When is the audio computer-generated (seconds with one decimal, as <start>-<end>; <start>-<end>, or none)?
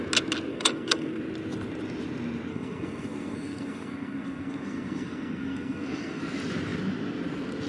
0.5-1.2; 2.5-6.2